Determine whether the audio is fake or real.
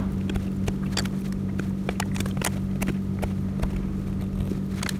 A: real